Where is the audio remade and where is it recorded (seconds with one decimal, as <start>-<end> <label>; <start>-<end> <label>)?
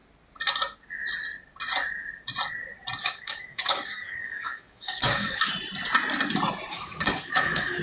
0.0-3.0 recorded; 3.0-5.5 remade; 5.5-6.7 recorded; 6.7-7.8 remade